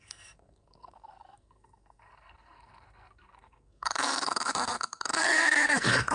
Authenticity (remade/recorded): remade